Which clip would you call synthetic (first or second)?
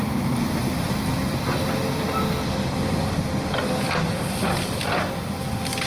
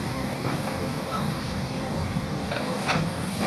second